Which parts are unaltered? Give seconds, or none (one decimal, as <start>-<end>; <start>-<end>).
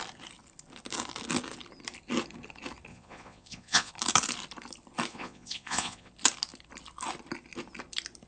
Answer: 0.0-2.9; 3.9-5.1; 6.1-8.3